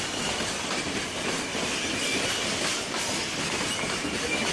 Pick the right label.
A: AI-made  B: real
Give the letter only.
B